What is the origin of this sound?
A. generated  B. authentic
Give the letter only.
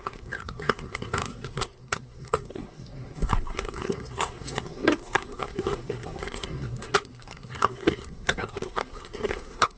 A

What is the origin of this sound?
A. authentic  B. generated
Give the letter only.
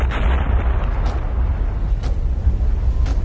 A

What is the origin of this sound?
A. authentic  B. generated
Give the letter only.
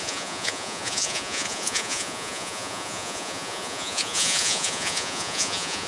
B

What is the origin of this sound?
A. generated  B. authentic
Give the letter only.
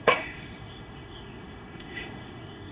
A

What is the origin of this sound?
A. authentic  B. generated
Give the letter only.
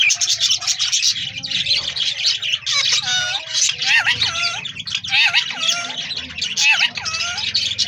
A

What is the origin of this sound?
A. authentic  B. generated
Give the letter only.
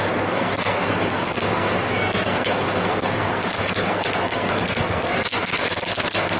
B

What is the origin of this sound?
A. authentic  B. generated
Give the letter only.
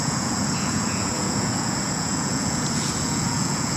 B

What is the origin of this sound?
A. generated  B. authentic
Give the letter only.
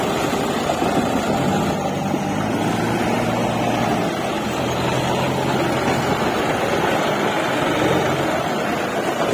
B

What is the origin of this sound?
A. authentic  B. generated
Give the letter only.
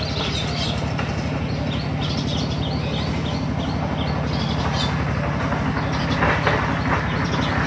A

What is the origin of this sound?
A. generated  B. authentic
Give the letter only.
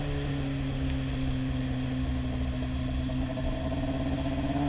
B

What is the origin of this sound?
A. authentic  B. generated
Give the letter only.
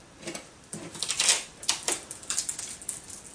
A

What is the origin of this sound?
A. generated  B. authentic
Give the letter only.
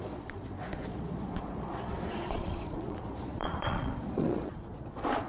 A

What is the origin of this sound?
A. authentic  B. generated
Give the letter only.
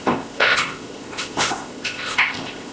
B